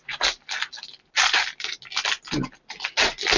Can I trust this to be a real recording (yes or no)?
yes